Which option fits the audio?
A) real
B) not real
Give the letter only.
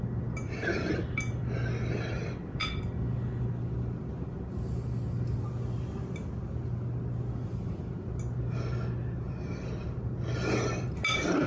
A